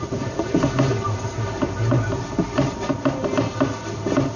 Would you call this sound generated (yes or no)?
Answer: no